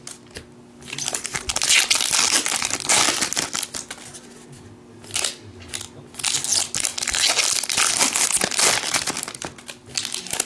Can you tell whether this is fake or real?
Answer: real